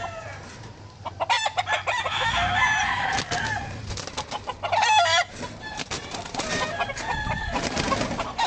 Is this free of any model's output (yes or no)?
yes